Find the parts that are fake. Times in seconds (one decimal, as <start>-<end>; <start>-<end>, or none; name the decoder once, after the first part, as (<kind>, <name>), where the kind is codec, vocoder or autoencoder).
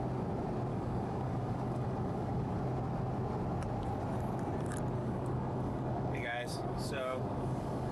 0.7-2.6 (codec, DAC); 5.0-7.9